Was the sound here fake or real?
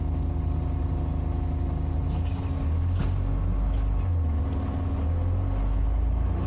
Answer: real